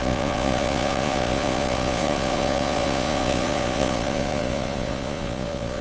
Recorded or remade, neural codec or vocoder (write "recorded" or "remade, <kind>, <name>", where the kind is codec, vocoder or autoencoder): remade, vocoder, Vocos